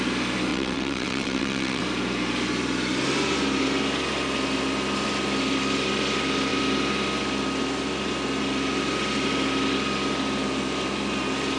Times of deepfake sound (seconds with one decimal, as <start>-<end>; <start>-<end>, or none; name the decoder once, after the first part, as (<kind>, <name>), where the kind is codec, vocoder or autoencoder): 0.5-1.8 (vocoder, WaveNeXt)